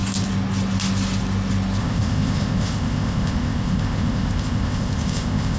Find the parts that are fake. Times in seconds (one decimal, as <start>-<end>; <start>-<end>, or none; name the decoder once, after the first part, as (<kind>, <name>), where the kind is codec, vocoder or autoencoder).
1.8-5.6 (codec, ZipCodec)